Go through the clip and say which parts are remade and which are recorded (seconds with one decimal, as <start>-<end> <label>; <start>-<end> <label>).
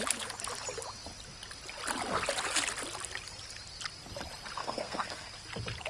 0.0-4.6 recorded; 4.6-5.3 remade; 5.3-5.9 recorded